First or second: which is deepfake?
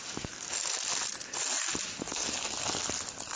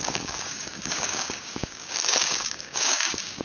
second